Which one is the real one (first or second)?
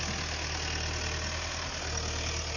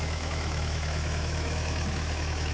first